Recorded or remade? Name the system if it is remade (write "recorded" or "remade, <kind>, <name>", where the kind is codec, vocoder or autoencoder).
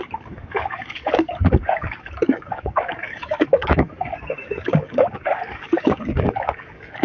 remade, codec, DAC